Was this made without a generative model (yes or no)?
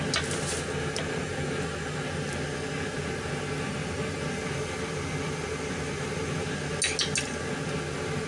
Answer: yes